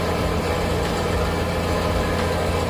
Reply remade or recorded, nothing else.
recorded